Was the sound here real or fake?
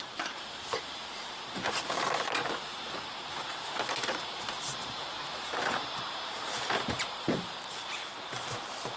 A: fake